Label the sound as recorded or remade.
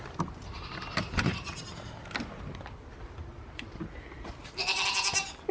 recorded